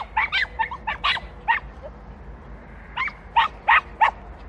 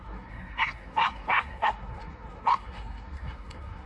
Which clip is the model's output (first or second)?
second